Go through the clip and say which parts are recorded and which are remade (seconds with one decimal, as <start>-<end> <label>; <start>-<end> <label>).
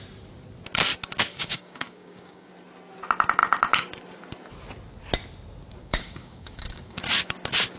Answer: 0.0-1.3 recorded; 1.3-2.5 remade; 2.5-5.8 recorded; 5.8-7.0 remade; 7.0-7.8 recorded